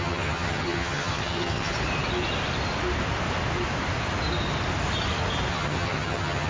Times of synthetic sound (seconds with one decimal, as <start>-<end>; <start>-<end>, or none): 0.0-1.7; 5.5-6.5